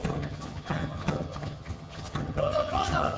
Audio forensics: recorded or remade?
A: remade